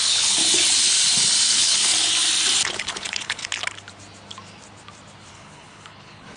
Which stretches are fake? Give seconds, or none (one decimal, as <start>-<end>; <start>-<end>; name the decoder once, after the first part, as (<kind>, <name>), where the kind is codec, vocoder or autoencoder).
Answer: 0.0-0.4 (codec, HILCodec); 1.5-1.9; 2.8-3.4; 5.3-6.4